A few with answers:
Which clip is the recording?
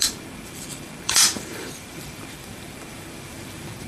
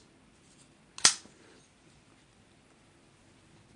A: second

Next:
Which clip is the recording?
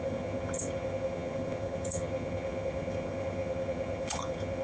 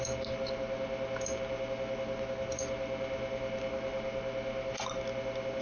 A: second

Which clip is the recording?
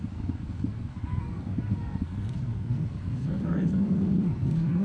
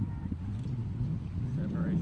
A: second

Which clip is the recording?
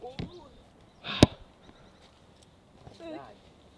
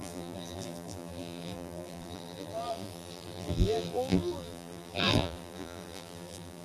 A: first